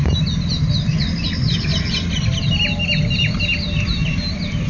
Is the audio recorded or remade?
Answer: recorded